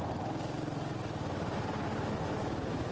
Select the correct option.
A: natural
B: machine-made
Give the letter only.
A